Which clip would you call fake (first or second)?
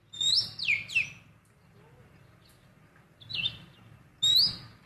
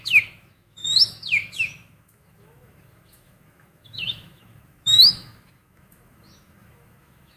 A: second